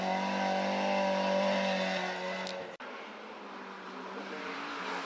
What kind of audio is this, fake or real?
real